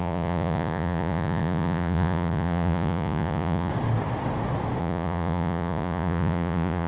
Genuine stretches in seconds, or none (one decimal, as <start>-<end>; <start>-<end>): 3.7-4.8